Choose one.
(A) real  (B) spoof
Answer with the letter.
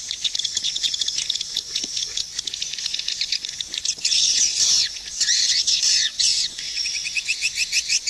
B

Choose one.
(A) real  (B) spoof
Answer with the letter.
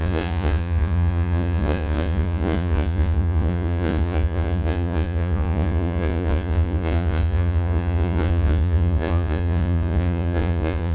B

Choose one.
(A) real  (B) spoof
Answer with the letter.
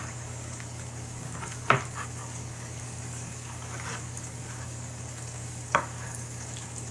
B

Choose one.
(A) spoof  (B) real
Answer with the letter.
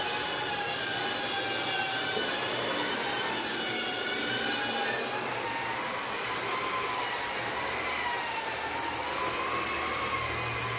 B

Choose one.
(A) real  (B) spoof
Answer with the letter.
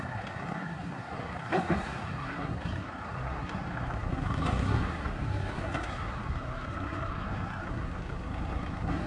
B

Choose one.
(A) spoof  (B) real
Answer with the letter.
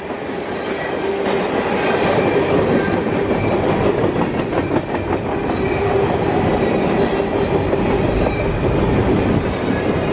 B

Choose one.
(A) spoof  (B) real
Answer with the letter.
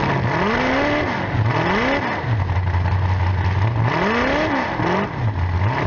B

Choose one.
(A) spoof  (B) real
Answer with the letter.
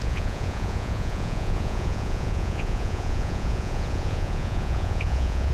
A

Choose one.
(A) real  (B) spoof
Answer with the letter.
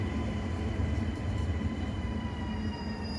B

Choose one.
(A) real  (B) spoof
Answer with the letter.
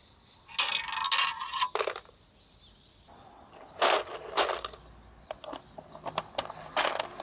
A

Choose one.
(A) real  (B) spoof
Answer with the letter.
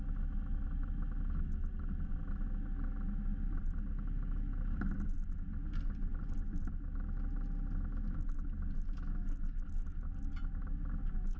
A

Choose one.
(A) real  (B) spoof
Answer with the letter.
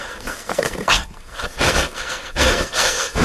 B